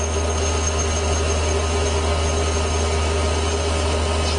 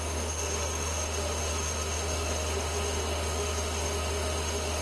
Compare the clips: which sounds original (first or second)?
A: first